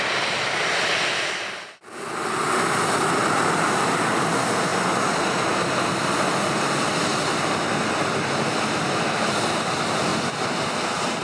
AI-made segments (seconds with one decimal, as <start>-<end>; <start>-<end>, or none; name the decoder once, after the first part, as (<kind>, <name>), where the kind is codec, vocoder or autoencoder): none